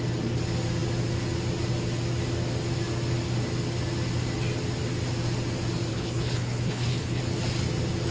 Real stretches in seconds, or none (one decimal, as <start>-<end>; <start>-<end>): 0.0-5.9; 7.2-8.1